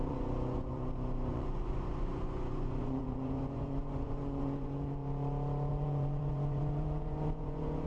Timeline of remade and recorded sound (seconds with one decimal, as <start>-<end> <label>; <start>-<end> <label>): 0.0-5.0 remade; 5.0-5.7 recorded; 5.7-7.9 remade